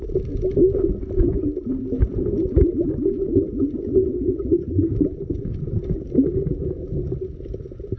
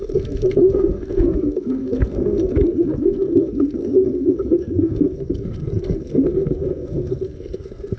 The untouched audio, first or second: first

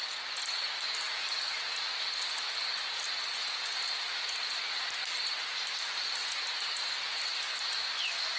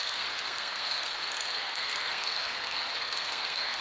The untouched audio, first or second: first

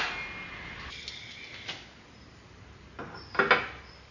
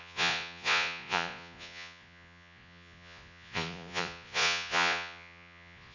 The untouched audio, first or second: first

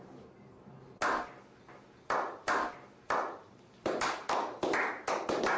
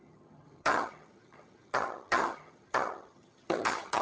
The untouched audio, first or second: first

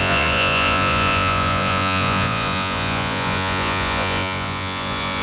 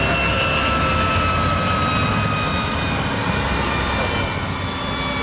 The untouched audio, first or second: second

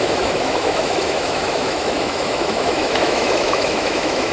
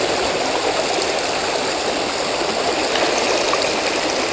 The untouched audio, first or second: second